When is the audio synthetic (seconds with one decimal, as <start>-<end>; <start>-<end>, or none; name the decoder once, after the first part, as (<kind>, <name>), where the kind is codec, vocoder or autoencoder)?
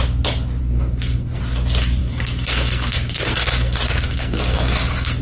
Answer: 0.6-1.4 (codec, SNAC); 2.0-5.2